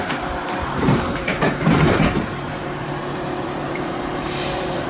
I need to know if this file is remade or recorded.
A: remade